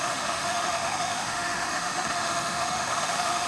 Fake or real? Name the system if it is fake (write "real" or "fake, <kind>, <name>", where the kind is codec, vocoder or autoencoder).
fake, autoencoder, DAC-VAE